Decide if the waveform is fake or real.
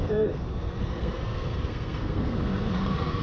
fake